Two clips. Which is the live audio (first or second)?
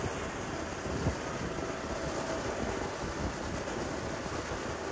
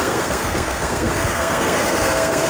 first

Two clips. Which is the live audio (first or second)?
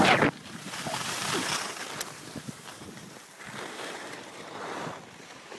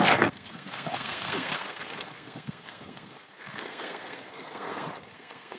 first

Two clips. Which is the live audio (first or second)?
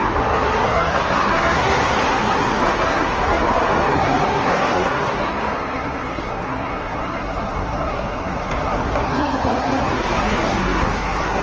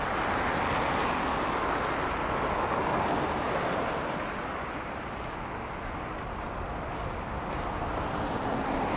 second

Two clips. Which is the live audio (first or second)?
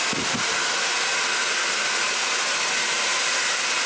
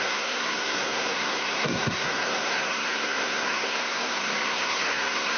first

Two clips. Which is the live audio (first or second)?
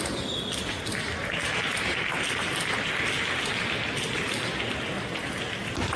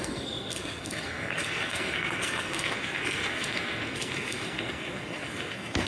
first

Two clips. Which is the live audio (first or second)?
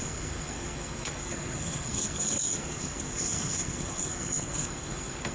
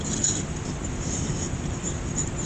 second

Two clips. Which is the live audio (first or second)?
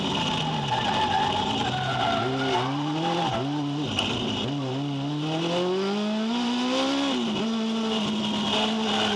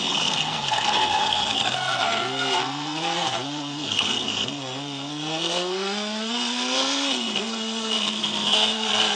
first